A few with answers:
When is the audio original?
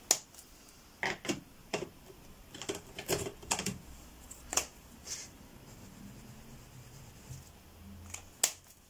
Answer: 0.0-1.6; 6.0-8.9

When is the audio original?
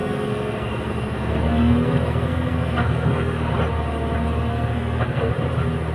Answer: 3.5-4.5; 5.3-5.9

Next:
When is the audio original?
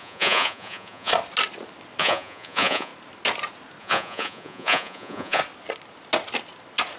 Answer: 1.1-2.0; 2.9-3.8; 5.4-7.0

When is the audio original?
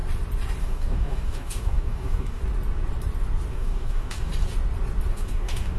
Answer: 0.0-0.6; 2.4-3.5; 4.3-5.1